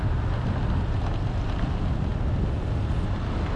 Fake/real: real